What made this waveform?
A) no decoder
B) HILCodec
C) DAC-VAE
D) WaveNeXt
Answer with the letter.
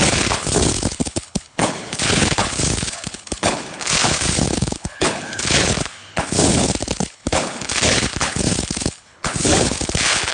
B